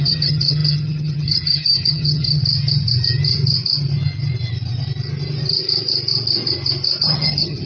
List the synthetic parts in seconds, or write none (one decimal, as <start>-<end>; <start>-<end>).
0.0-2.4; 7.0-7.7